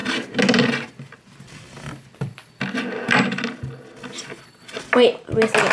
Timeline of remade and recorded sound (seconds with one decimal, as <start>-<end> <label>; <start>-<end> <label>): 0.0-5.7 recorded